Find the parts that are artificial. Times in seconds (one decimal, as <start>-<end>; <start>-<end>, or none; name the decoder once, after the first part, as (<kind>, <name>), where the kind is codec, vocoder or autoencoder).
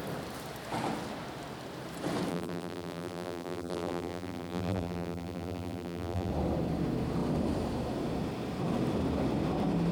2.3-6.3 (vocoder, BigVGAN v2)